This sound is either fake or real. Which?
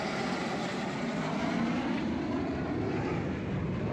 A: real